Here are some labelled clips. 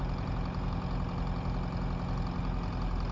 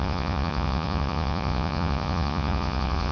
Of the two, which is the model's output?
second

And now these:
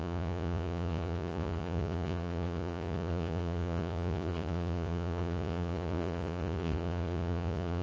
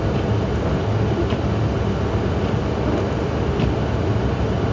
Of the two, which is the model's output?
first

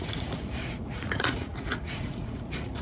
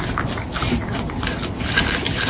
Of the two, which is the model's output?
first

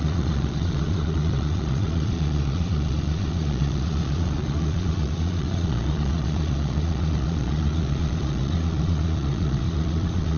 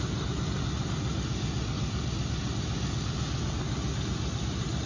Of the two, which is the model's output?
first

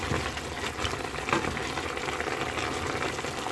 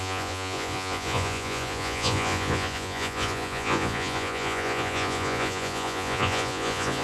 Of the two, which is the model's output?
second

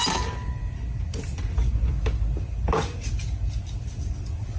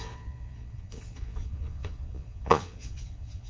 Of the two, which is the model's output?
second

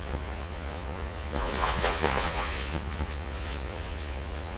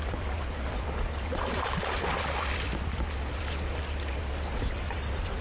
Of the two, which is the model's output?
first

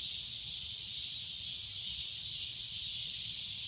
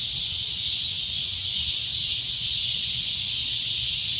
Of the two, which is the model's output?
second